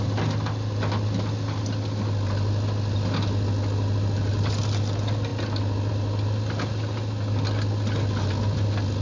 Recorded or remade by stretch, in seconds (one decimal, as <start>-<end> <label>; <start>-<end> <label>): 0.0-9.0 recorded